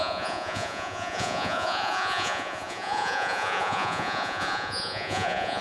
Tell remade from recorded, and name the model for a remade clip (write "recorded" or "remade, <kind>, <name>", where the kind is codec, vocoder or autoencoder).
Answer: remade, vocoder, Vocos